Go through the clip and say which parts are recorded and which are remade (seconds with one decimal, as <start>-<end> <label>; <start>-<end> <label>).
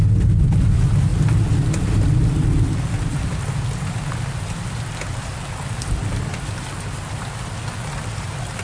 0.0-8.6 recorded